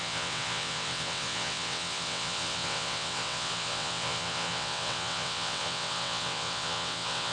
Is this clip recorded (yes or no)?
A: no